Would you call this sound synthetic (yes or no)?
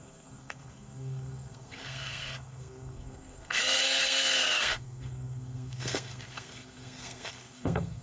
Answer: yes